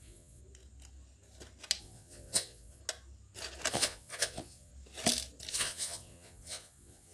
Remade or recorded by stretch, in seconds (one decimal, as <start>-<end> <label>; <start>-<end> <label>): 0.0-0.4 remade; 0.4-1.8 recorded; 1.8-2.8 remade; 2.8-3.7 recorded; 3.7-4.7 remade; 4.7-5.5 recorded; 5.5-7.1 remade